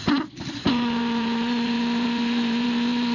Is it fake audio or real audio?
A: fake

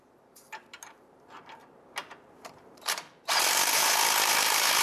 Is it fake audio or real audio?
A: fake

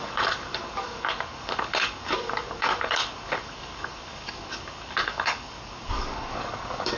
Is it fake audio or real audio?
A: fake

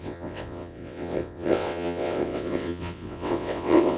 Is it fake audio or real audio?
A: fake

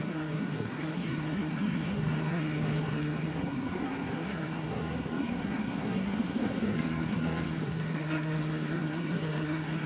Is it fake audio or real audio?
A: fake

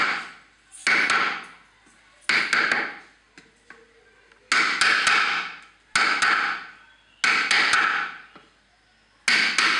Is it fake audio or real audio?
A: real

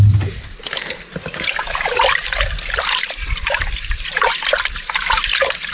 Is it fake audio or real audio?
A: real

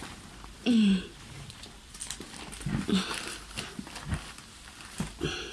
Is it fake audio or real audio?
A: fake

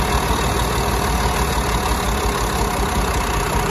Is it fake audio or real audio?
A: real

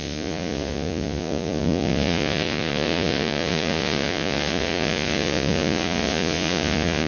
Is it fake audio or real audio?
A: fake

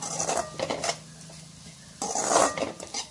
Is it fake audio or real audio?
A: real